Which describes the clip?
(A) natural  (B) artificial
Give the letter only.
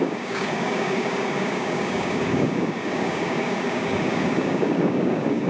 B